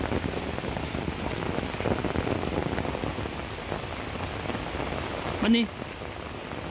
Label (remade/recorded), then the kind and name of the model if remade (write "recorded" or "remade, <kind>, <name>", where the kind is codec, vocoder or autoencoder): recorded